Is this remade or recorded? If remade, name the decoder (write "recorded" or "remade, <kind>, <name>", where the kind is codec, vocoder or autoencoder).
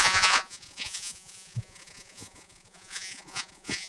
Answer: remade, vocoder, Vocos